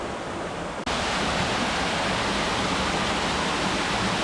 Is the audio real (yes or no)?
yes